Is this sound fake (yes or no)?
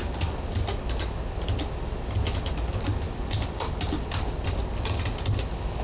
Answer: no